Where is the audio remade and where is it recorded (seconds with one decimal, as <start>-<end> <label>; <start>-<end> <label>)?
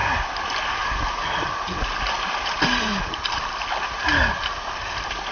0.0-5.3 recorded